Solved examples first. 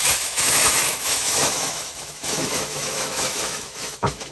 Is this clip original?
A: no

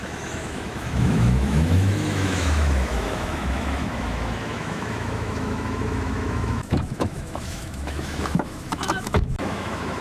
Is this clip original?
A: no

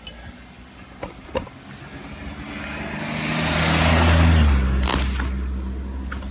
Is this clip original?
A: yes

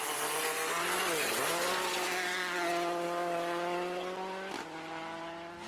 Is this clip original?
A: yes